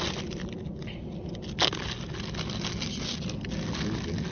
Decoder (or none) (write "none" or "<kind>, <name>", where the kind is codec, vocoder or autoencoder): none